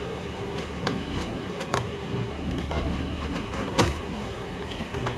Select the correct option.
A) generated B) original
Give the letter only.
A